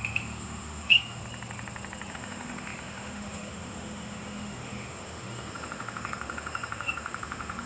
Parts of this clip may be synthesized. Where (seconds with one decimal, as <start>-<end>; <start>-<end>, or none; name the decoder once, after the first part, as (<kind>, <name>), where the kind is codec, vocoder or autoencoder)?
0.0-1.2 (autoencoder, DAC-VAE); 2.1-7.7